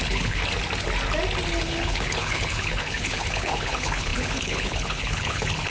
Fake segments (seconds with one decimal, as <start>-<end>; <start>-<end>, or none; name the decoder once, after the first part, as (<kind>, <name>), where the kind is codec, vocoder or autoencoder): 0.0-0.4 (codec, HILCodec); 1.6-5.7